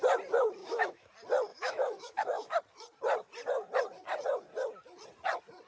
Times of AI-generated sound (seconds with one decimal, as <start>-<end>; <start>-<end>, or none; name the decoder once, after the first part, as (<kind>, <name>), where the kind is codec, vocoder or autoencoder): 0.6-1.1 (autoencoder, DAC-VAE); 1.5-2.6